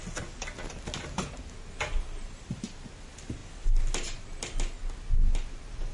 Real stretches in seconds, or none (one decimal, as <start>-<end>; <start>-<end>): 0.0-5.9